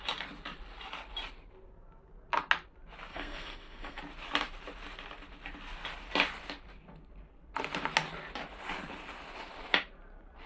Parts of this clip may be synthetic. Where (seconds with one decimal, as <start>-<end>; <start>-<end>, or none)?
3.1-4.0